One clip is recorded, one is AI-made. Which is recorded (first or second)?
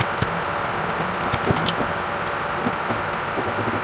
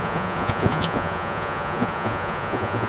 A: first